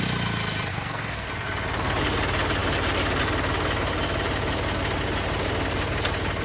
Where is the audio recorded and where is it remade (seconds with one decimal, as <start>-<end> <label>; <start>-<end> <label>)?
0.0-0.7 recorded; 0.7-1.3 remade; 1.3-6.4 recorded